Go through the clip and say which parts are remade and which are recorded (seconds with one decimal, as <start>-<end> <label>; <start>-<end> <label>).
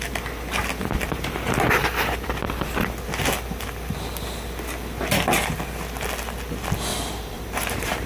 0.0-6.9 recorded; 6.9-8.1 remade